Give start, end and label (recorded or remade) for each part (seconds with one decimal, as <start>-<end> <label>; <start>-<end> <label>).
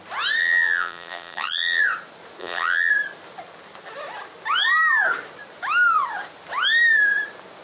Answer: 0.0-0.4 recorded; 0.4-1.8 remade; 1.8-2.4 recorded; 2.4-2.9 remade; 2.9-7.6 recorded